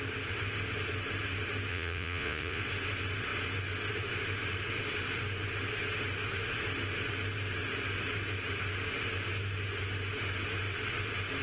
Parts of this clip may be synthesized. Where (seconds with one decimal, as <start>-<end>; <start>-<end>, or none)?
1.7-2.6